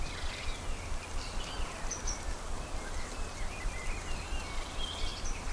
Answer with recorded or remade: remade